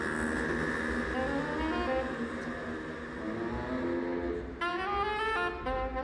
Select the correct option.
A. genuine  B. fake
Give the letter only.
A